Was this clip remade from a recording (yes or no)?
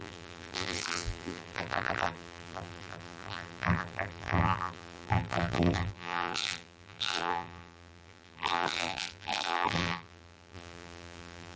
yes